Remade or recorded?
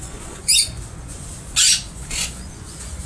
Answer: remade